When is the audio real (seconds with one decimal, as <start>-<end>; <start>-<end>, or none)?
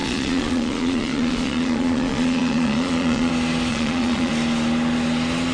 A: 3.3-3.7; 4.3-5.5